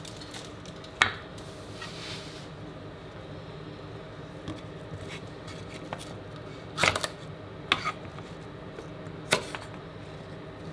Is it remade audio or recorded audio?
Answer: recorded